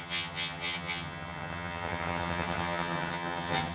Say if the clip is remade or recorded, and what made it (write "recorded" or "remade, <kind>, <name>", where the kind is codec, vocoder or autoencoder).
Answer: remade, vocoder, HiFi-GAN